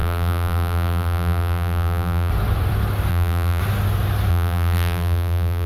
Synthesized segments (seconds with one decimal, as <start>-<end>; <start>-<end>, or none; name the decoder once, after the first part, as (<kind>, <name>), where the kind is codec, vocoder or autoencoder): 0.0-2.3 (vocoder, BigVGAN v2); 3.1-3.6; 4.3-5.7